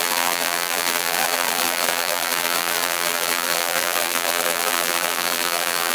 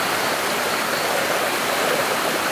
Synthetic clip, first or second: first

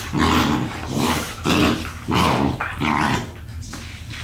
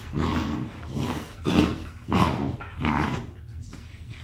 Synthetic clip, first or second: second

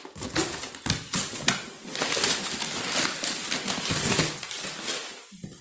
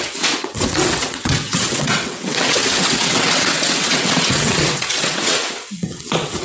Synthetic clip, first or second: second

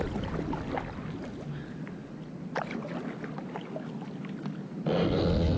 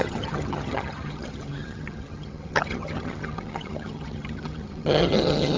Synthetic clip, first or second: second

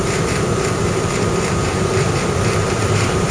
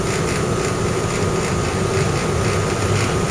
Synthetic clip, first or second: first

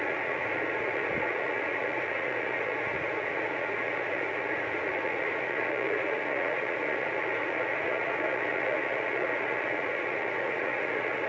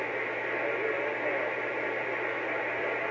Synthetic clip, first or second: first